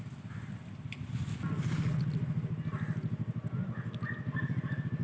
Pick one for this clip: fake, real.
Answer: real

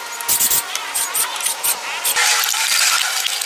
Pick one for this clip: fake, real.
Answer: real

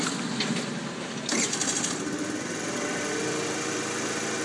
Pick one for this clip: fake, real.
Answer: real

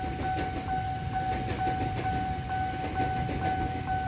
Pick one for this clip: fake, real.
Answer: real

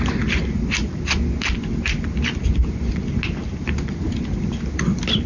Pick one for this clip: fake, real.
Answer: real